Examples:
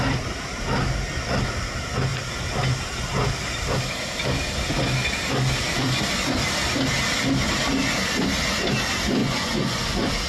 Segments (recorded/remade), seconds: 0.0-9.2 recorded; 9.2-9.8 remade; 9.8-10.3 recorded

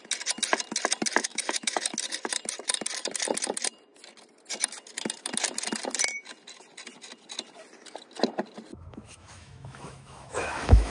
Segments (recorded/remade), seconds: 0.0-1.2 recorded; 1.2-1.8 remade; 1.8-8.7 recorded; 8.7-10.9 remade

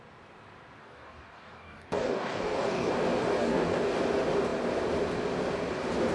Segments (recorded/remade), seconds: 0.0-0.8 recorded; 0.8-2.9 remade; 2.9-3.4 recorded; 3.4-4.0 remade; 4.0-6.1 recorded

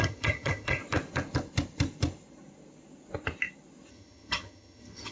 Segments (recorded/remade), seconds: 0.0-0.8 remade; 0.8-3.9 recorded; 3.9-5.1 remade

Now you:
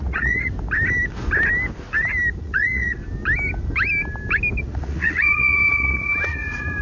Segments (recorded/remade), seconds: 0.0-0.5 remade; 0.5-2.4 recorded; 2.4-3.0 remade; 3.0-4.6 recorded; 4.6-6.8 remade

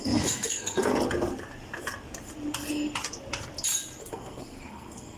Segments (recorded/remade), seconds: 0.0-0.9 remade; 0.9-4.0 recorded; 4.0-5.2 remade